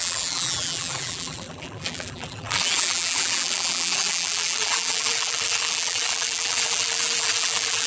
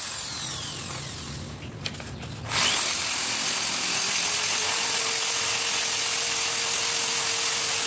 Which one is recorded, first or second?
second